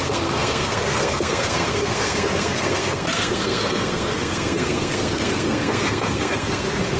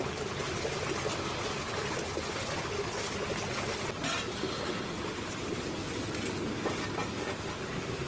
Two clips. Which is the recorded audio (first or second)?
second